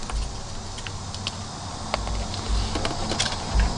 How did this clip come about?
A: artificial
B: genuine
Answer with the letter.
B